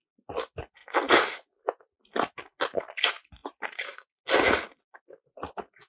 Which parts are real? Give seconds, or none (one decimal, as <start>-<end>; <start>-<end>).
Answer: 0.0-3.4; 4.2-5.9